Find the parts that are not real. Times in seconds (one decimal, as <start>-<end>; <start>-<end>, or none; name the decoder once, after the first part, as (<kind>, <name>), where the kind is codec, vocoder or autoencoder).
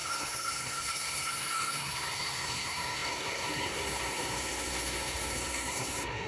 0.0-6.3 (codec, SNAC)